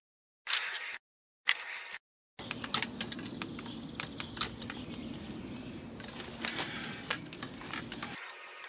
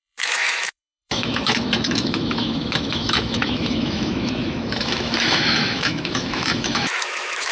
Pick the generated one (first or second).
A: second